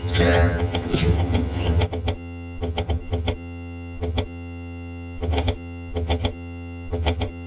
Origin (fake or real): fake